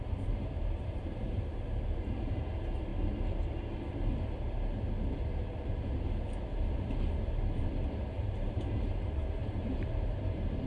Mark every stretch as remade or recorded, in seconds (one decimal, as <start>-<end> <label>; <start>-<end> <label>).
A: 0.0-2.9 remade; 2.9-8.1 recorded; 8.1-10.7 remade